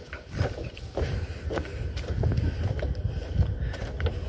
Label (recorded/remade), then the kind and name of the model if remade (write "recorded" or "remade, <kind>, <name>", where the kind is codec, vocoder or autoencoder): recorded